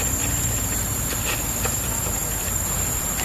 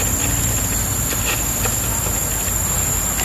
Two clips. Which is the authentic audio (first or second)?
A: second